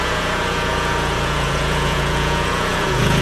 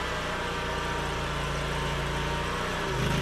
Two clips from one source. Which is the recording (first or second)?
second